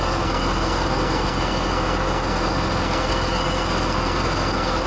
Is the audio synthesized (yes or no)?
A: yes